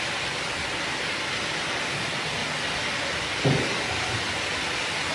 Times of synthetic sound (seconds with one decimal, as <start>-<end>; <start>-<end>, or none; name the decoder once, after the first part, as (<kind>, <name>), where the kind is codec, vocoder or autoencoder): none